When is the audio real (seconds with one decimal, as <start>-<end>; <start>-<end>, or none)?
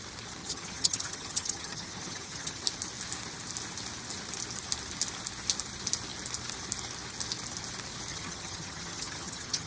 0.0-0.4; 2.6-8.1